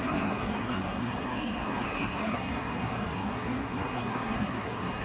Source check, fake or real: fake